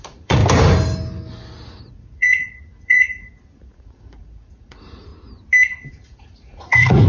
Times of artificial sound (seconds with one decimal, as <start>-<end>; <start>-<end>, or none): 0.0-0.4; 1.8-5.1; 5.9-7.1